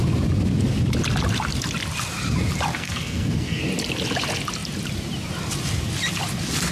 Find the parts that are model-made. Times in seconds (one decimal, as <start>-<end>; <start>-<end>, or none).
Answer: 2.7-3.6